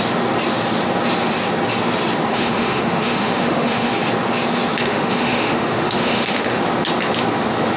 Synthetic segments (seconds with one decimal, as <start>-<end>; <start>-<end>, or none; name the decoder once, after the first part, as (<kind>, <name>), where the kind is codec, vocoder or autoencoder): 2.3-3.9 (autoencoder, DAC-VAE); 4.8-6.6